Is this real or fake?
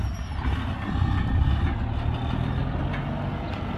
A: real